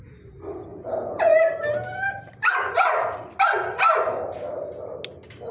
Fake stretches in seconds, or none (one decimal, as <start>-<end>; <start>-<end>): 0.7-1.4